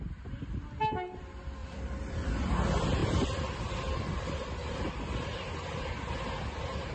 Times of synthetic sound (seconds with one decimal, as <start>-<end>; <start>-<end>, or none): 1.6-2.3; 3.0-4.8